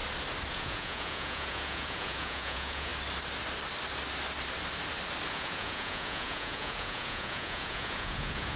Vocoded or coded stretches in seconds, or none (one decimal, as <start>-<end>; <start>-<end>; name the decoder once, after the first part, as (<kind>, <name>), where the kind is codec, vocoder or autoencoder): 0.5-2.9 (vocoder, Vocos); 5.3-8.6